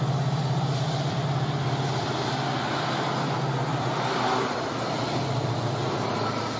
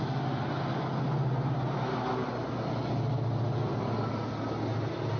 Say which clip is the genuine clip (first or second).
second